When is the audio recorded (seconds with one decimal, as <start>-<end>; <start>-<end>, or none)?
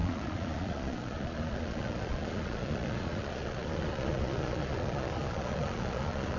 none